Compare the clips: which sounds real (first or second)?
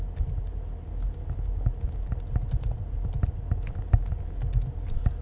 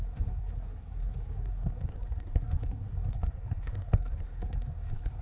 first